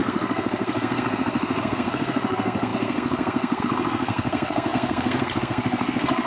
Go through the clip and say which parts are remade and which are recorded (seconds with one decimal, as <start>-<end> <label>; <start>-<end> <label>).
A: 0.0-6.3 remade